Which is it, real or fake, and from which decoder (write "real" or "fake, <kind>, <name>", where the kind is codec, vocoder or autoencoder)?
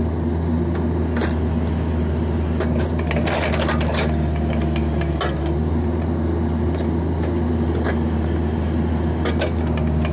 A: real